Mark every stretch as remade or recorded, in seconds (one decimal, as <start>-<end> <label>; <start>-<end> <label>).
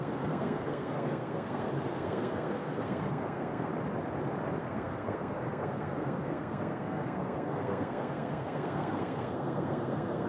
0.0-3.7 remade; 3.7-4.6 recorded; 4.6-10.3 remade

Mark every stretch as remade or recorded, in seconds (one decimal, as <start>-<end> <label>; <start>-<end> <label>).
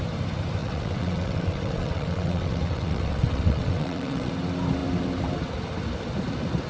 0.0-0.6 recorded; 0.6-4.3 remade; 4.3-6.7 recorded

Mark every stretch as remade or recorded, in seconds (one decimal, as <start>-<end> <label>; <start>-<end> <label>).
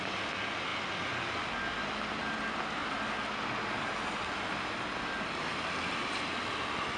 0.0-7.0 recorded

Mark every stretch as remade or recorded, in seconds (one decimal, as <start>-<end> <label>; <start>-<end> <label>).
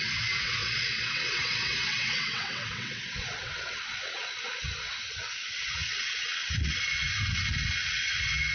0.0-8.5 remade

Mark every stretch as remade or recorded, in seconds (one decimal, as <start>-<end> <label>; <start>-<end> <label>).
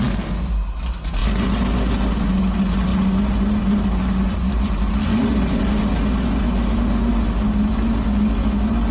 0.0-8.9 recorded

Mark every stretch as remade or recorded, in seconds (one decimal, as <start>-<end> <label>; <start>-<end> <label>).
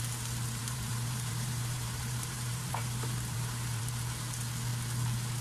0.0-0.6 recorded; 0.6-3.8 remade; 3.8-5.4 recorded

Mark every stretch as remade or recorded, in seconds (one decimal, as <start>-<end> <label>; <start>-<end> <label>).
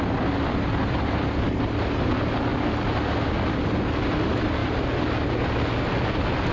0.0-6.5 recorded